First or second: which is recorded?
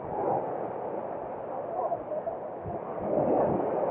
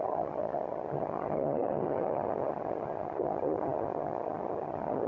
first